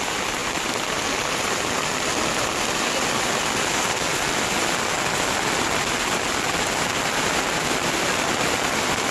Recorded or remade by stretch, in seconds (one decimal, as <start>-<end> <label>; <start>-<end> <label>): 0.0-9.1 recorded